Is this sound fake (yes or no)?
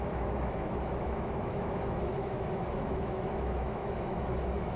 yes